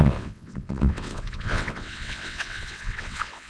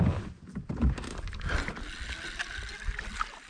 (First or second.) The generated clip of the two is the first